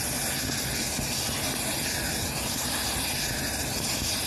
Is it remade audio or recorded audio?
recorded